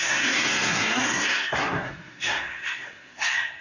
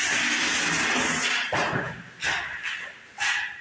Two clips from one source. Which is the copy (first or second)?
first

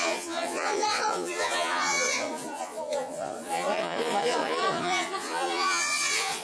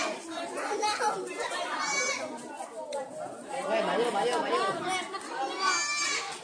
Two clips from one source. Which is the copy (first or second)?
first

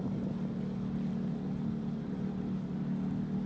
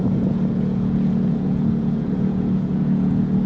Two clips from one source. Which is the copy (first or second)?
second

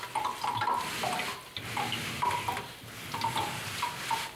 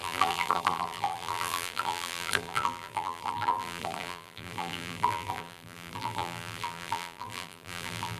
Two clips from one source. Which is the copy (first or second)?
second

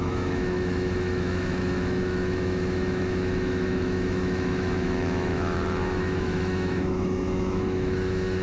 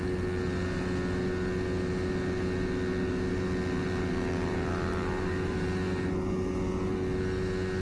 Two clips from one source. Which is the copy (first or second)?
first